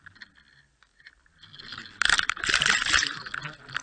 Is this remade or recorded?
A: recorded